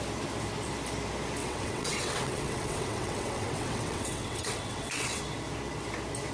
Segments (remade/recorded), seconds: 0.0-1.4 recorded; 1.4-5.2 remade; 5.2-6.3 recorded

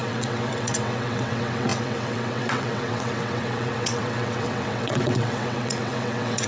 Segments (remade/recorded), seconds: 0.0-6.5 remade

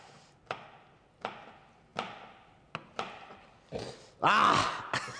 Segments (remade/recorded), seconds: 0.0-5.2 recorded